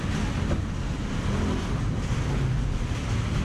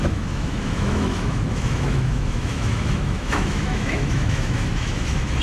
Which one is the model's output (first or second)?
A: second